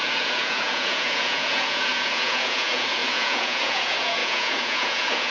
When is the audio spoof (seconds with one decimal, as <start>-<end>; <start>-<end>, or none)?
0.0-5.3